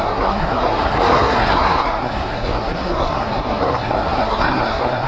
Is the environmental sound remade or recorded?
remade